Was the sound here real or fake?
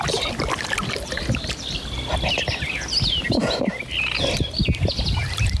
real